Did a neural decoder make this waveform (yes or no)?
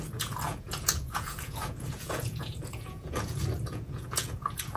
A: yes